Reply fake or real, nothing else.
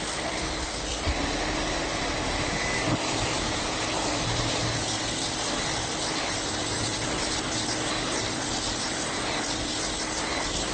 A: real